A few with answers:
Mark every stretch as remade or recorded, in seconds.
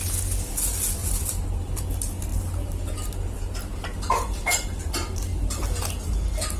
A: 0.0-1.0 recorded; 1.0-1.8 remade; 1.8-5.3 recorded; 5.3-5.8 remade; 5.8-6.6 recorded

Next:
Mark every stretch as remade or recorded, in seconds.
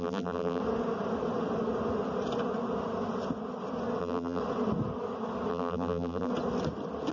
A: 0.0-0.6 remade; 0.6-4.0 recorded; 4.0-4.4 remade; 4.4-5.5 recorded; 5.5-6.3 remade; 6.3-7.1 recorded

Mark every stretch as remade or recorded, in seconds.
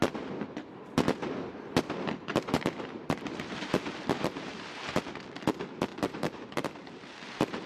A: 0.0-2.3 recorded; 2.3-4.8 remade; 4.8-5.9 recorded; 5.9-7.7 remade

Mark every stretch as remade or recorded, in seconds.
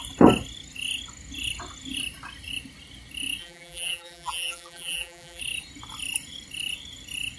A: 0.0-3.4 recorded; 3.4-5.4 remade; 5.4-7.4 recorded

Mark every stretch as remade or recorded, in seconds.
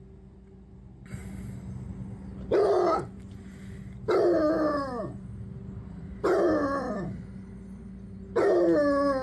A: 0.0-9.2 recorded